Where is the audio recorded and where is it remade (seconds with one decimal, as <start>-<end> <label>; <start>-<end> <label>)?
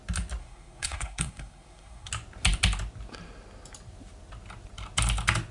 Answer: 0.0-0.4 recorded; 0.4-2.1 remade; 2.1-5.5 recorded